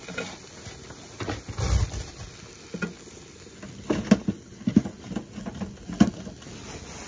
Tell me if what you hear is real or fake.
real